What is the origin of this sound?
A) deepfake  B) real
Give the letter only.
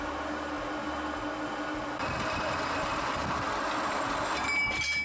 B